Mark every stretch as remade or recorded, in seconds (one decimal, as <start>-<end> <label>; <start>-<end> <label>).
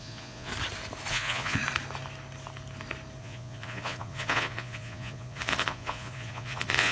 0.0-0.5 remade; 0.5-1.1 recorded; 1.1-1.6 remade; 1.6-3.2 recorded; 3.2-6.9 remade